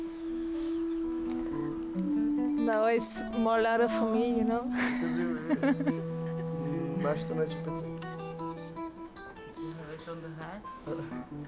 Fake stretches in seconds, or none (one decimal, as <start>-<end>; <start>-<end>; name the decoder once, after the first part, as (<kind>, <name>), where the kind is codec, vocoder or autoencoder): 0.0-1.6 (autoencoder, DAC-VAE); 5.9-6.8; 7.8-11.5